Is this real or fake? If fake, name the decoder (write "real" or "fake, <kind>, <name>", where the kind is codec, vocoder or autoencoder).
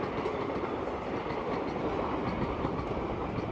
real